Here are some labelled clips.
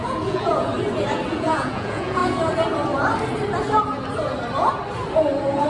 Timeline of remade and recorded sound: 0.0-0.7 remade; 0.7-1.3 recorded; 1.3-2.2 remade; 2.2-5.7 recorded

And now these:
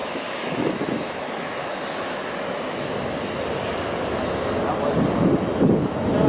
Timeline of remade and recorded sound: 0.0-2.9 remade; 2.9-6.3 recorded

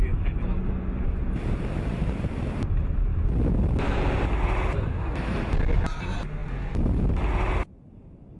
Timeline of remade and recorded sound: 0.0-8.4 recorded

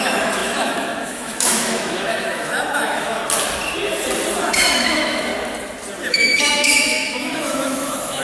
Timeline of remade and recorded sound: 0.0-3.2 remade; 3.2-4.4 recorded; 4.4-5.3 remade; 5.3-6.1 recorded; 6.1-8.2 remade

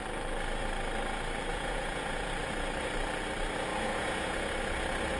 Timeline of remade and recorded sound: 0.0-1.5 recorded; 1.5-2.3 remade; 2.3-3.7 recorded; 3.7-4.5 remade; 4.5-5.2 recorded

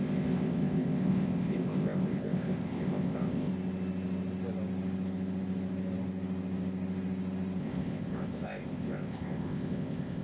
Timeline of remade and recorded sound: 0.0-3.5 remade; 3.5-7.6 recorded; 7.6-10.2 remade

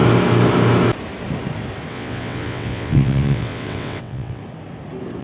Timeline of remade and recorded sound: 0.0-1.9 recorded; 1.9-4.4 remade; 4.4-5.2 recorded

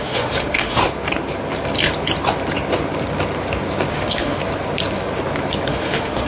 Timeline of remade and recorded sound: 0.0-0.8 remade; 0.8-3.9 recorded; 3.9-4.4 remade; 4.4-5.7 recorded; 5.7-6.3 remade